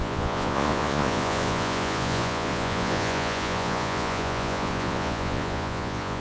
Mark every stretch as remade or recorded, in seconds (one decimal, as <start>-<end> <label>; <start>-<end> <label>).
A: 0.0-6.2 remade